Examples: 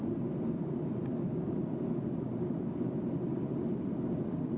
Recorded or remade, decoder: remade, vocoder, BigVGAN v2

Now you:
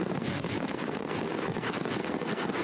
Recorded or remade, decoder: remade, codec, SNAC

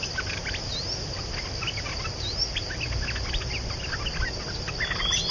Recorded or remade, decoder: recorded